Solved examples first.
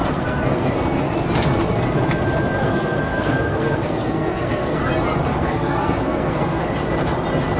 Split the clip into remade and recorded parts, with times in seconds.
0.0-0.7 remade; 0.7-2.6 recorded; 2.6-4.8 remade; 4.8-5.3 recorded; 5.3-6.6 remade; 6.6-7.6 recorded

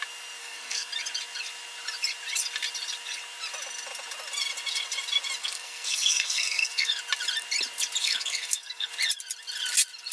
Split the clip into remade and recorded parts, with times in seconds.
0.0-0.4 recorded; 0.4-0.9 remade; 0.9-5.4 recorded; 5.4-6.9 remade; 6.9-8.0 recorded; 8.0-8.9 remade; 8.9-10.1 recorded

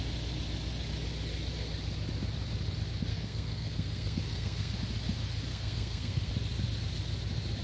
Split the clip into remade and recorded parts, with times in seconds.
0.0-3.1 recorded; 3.1-4.7 remade; 4.7-5.5 recorded; 5.5-6.3 remade; 6.3-7.6 recorded

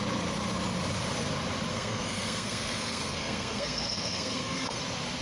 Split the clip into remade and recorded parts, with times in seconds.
0.0-1.7 recorded; 1.7-4.8 remade; 4.8-5.2 recorded

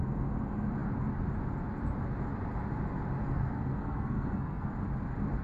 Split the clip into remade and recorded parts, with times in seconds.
0.0-3.2 recorded; 3.2-4.7 remade; 4.7-5.4 recorded